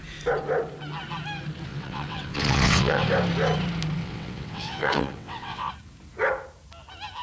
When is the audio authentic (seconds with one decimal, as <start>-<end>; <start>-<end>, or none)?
0.0-1.7; 3.0-4.0; 5.7-7.2